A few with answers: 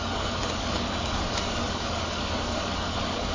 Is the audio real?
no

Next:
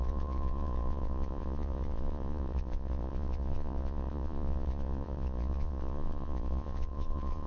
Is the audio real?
no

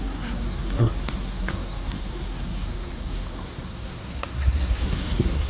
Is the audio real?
no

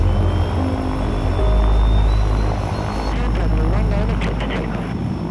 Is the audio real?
yes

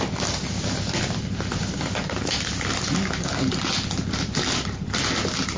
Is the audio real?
yes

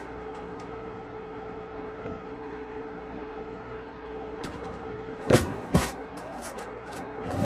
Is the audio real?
no